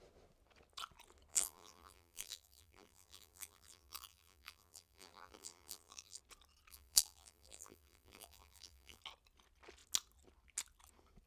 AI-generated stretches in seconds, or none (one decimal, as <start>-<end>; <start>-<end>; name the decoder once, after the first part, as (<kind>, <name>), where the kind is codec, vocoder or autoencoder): 1.3-6.2 (vocoder, BigVGAN v2); 6.7-9.0